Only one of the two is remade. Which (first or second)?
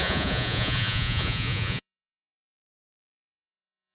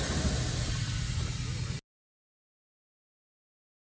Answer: first